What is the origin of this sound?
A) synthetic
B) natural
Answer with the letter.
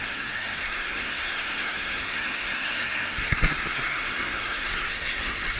A